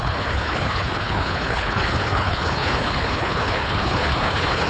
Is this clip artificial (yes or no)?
yes